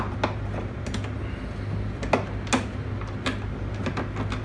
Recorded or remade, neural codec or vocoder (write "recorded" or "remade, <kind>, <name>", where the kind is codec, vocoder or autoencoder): recorded